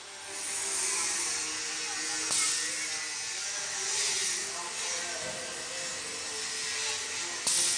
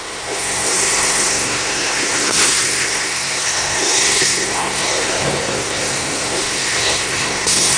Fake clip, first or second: second